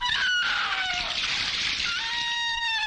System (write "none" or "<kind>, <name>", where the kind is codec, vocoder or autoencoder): none